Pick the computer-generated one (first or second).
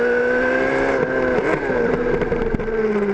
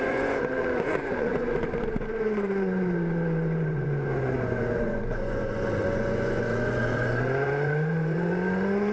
second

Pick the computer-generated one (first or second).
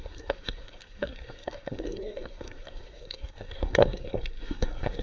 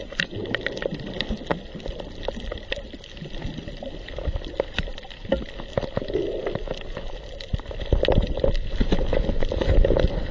first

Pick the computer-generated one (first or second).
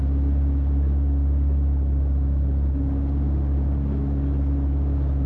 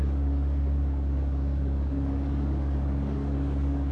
second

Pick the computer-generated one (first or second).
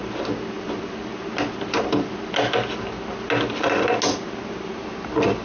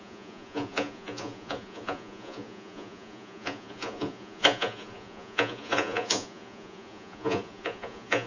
second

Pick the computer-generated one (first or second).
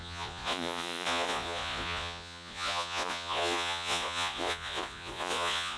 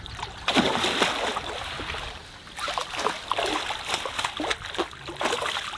first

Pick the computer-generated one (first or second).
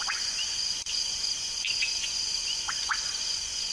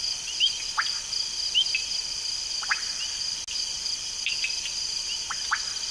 first